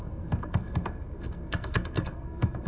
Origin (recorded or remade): remade